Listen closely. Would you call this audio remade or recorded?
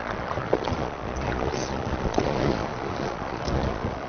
remade